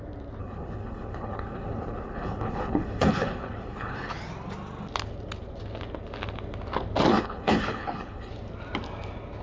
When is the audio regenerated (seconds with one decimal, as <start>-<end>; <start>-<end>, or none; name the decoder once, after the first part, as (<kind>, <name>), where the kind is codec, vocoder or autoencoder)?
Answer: 0.4-4.1 (codec, HILCodec); 7.1-8.3